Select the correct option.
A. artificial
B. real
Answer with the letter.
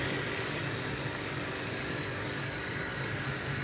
A